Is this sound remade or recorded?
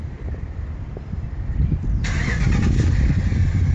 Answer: remade